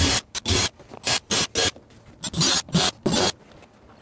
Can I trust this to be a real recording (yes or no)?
yes